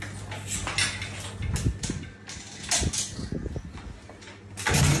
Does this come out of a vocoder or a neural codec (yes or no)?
no